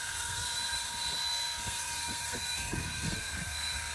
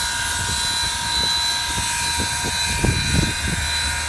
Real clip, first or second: second